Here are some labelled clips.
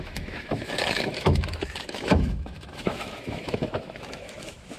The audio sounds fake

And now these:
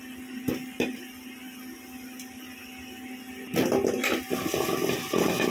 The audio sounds real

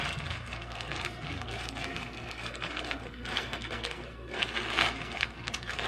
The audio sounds fake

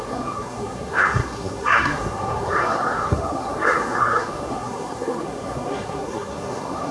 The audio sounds fake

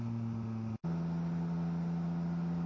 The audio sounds real